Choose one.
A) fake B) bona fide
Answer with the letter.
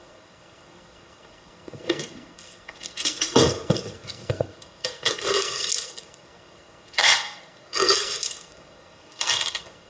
A